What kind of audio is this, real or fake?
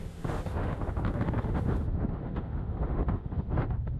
fake